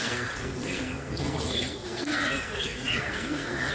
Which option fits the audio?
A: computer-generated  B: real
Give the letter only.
A